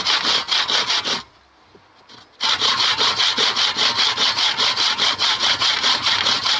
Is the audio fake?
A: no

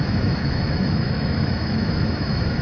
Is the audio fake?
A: yes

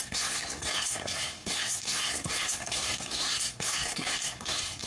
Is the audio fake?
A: yes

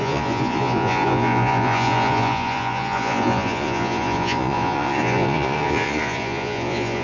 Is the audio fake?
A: yes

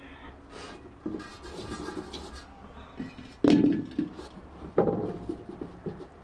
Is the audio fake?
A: no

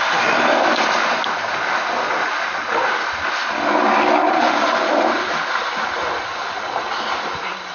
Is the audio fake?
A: no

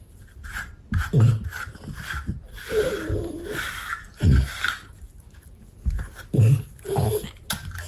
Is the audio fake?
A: no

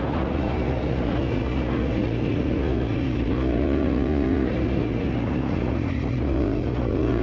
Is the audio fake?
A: yes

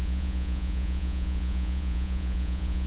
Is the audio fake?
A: yes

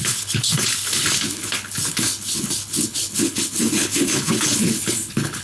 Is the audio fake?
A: yes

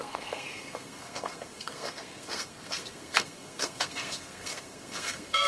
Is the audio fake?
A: yes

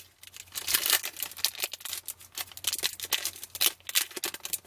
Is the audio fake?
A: no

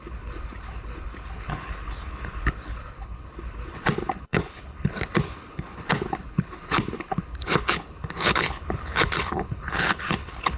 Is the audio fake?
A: yes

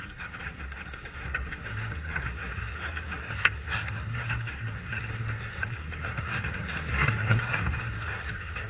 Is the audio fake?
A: yes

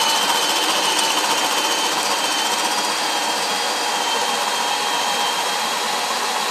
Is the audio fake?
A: no